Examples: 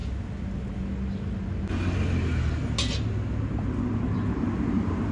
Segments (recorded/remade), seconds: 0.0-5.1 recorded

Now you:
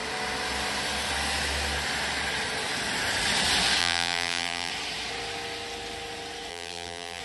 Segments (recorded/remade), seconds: 0.0-3.8 recorded; 3.8-4.7 remade; 4.7-6.5 recorded; 6.5-7.2 remade

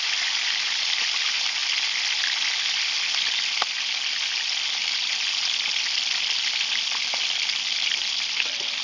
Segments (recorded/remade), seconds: 0.0-8.8 recorded

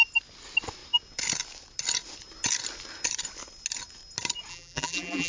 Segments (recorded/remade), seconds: 0.0-4.5 recorded; 4.5-5.3 remade

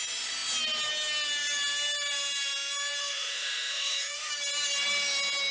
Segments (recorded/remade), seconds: 0.0-3.0 recorded; 3.0-4.3 remade; 4.3-5.5 recorded